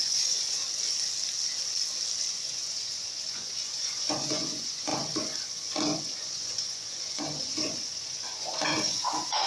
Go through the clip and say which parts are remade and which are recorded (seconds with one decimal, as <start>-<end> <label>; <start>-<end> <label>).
0.0-0.6 remade; 0.6-2.3 recorded; 2.3-9.5 remade